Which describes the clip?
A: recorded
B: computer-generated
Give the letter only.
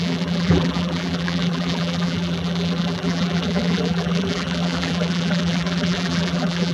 B